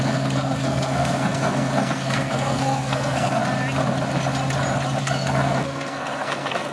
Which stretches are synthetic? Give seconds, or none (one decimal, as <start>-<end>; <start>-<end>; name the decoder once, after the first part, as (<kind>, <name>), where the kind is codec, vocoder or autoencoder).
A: 0.0-3.4 (codec, SNAC); 5.0-6.7